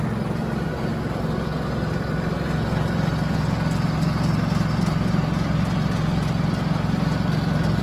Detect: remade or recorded recorded